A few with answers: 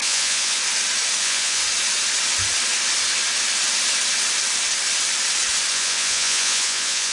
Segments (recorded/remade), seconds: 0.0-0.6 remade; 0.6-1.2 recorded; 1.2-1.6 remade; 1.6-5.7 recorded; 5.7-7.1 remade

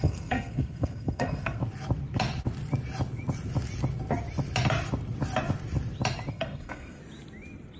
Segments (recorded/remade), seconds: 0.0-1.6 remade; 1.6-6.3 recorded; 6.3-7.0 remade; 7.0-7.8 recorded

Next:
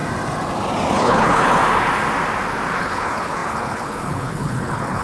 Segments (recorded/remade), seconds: 0.0-0.9 recorded; 0.9-1.6 remade; 1.6-2.8 recorded; 2.8-5.0 remade

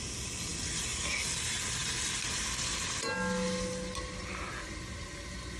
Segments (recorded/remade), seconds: 0.0-5.6 recorded

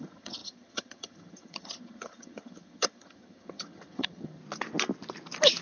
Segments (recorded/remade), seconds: 0.0-4.4 remade; 4.4-5.6 recorded

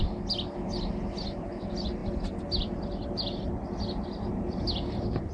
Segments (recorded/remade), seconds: 0.0-5.3 recorded

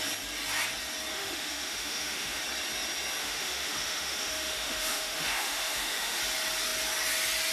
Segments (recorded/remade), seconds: 0.0-1.1 recorded; 1.1-2.4 remade; 2.4-3.2 recorded; 3.2-6.2 remade; 6.2-7.5 recorded